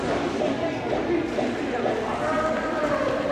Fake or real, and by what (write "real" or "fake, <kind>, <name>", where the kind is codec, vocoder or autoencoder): real